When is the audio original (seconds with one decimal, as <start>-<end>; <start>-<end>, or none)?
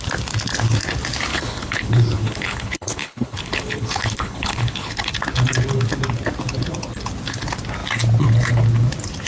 0.0-1.3; 5.1-9.3